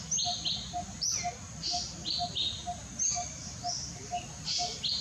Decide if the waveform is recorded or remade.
recorded